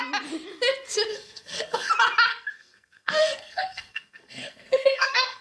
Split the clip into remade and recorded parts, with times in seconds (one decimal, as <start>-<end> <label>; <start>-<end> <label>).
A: 0.0-1.1 recorded; 1.1-1.9 remade; 1.9-2.3 recorded; 2.3-5.4 remade